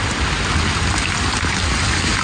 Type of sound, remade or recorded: recorded